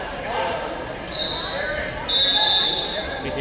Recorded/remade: recorded